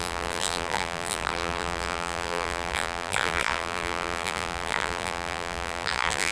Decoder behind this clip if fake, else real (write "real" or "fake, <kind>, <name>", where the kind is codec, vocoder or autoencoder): fake, vocoder, BigVGAN v2